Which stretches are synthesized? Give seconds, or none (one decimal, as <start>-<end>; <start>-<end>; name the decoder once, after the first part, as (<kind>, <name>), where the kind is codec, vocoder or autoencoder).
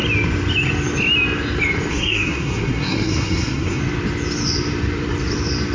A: 1.9-3.8 (codec, SNAC)